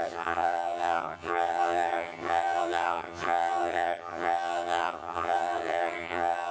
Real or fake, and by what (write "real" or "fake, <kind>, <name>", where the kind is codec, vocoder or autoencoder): fake, vocoder, HiFi-GAN